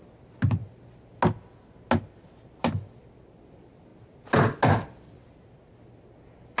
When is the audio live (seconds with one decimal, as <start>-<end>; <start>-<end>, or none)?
0.0-6.6